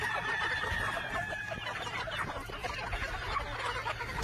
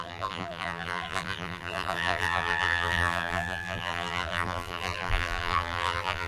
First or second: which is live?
first